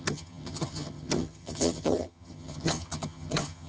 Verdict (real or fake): fake